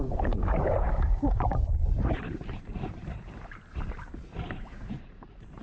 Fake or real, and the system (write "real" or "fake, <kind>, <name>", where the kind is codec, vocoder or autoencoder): fake, vocoder, BigVGAN v2